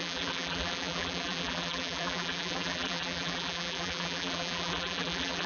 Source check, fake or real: fake